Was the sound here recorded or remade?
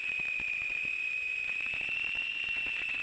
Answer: remade